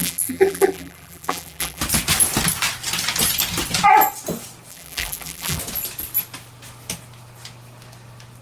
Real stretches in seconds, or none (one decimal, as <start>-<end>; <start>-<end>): 1.8-4.7; 5.6-8.4